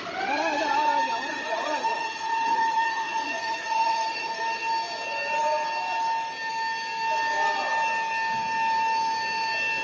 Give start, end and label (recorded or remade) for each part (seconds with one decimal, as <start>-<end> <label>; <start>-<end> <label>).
0.0-1.3 recorded; 1.3-4.4 remade; 4.4-9.8 recorded